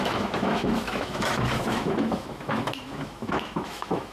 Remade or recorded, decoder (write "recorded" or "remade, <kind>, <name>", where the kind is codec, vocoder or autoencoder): remade, autoencoder, DAC-VAE